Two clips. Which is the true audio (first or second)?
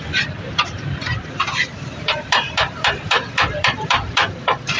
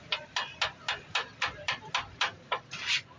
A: second